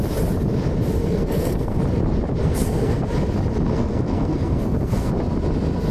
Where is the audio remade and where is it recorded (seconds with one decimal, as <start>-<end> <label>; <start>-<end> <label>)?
0.0-1.0 recorded; 1.0-1.8 remade; 1.8-2.4 recorded; 2.4-3.0 remade; 3.0-3.7 recorded; 3.7-5.1 remade; 5.1-5.9 recorded